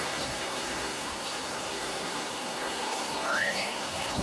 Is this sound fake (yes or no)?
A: yes